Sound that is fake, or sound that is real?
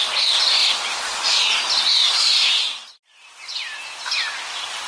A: real